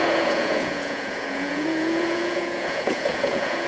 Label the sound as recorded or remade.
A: remade